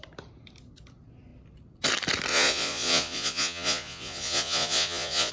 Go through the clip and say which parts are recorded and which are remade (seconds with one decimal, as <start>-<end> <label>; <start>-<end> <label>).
0.0-2.3 recorded; 2.3-5.3 remade